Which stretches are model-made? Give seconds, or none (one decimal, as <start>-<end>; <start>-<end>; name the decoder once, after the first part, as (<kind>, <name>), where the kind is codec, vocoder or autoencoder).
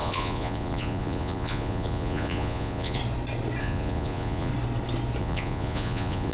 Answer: 0.0-3.0 (vocoder, Vocos); 3.6-4.5; 5.2-6.3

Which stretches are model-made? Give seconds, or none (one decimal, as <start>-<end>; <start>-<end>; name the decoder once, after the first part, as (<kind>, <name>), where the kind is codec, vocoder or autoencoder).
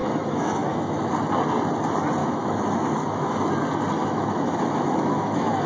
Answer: 0.0-1.1 (autoencoder, DAC-VAE); 2.2-3.5; 4.0-5.7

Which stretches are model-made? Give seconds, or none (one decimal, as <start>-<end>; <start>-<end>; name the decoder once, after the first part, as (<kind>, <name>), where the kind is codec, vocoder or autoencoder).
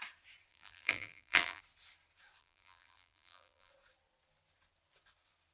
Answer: 0.5-1.6 (vocoder, BigVGAN v2); 2.4-3.7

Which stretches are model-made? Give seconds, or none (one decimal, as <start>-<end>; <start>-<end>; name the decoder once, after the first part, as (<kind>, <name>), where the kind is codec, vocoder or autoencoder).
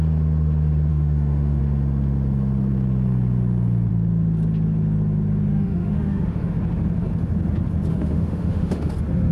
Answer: 0.9-1.6 (autoencoder, DAC-VAE); 5.5-6.5; 7.9-8.9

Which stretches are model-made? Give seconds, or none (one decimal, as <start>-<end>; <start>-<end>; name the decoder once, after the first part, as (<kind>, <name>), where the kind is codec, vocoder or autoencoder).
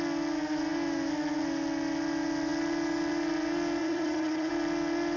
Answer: 3.8-4.5 (vocoder, HiFi-GAN)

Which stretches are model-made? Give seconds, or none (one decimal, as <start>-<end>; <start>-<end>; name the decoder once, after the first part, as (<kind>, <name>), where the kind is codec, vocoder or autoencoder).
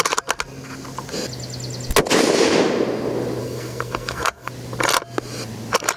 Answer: 3.4-4.5 (codec, SNAC)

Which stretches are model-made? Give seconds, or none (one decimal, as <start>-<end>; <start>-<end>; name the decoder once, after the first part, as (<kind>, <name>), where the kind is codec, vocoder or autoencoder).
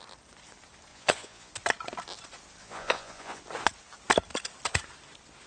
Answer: 0.9-1.5 (vocoder, Vocos); 2.6-3.4